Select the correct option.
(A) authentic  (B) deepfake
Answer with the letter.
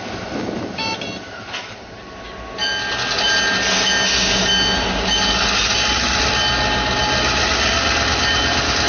A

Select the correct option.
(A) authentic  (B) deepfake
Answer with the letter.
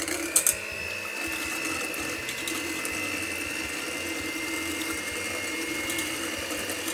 A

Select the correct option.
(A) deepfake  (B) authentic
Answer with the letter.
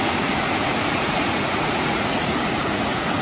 A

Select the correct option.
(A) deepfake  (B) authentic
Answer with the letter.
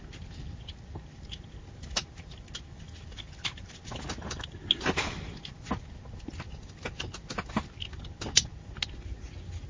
B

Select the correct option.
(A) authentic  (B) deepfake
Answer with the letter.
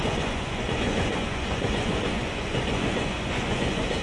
B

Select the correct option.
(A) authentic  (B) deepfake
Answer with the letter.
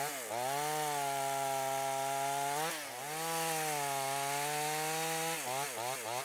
A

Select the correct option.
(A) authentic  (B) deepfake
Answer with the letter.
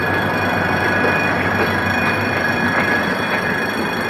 B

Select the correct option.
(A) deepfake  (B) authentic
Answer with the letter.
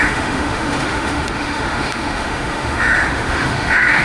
A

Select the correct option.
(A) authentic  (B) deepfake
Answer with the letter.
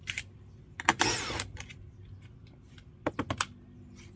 A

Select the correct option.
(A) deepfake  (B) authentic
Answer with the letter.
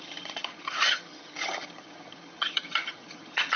A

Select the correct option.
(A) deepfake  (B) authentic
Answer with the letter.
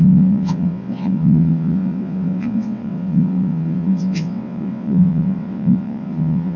A